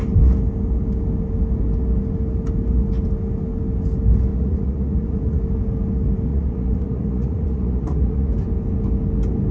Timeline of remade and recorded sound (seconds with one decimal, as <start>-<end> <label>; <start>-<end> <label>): 0.0-4.3 recorded; 4.3-5.4 remade; 5.4-6.3 recorded; 6.3-8.3 remade; 8.3-9.5 recorded